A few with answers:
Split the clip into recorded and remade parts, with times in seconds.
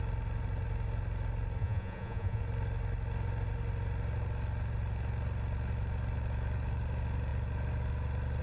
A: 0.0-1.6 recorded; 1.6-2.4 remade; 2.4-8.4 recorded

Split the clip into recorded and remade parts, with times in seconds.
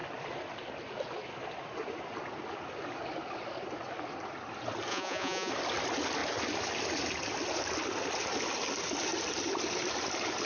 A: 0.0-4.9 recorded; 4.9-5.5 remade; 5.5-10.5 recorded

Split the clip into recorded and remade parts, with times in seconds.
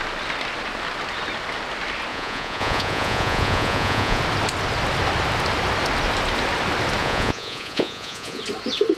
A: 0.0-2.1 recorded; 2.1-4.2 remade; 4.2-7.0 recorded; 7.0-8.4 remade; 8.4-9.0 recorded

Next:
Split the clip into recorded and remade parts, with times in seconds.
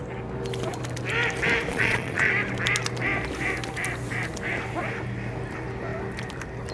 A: 0.0-1.7 recorded; 1.7-2.3 remade; 2.3-6.7 recorded